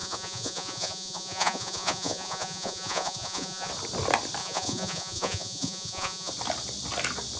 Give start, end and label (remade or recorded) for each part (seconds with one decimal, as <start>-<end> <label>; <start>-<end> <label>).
0.0-3.7 remade; 3.7-4.4 recorded; 4.4-6.3 remade; 6.3-7.4 recorded